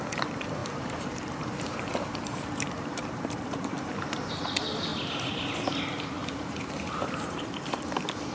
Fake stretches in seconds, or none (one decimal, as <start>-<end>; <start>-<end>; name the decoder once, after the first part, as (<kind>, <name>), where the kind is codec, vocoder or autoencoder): 0.6-4.3 (vocoder, BigVGAN v2); 6.2-7.5

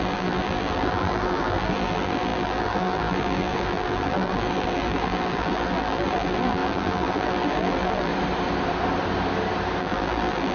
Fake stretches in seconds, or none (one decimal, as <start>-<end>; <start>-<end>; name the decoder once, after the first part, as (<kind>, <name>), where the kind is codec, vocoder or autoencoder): 0.0-8.1 (vocoder, BigVGAN v2); 9.8-10.5

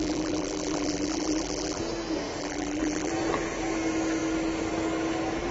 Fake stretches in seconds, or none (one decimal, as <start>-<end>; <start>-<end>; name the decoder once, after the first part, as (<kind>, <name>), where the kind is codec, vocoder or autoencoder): 0.0-1.8 (vocoder, BigVGAN v2); 2.4-3.1

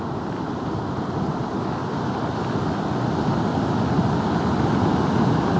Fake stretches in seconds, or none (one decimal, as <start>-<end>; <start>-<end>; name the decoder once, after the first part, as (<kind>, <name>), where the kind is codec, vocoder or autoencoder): none

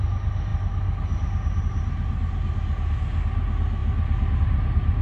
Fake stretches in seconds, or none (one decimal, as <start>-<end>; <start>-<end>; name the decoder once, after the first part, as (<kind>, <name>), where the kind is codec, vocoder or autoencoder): none

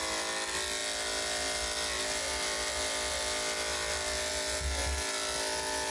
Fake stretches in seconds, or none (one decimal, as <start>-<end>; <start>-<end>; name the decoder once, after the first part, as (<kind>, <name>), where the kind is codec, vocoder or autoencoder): none